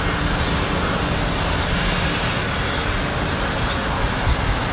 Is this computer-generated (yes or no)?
no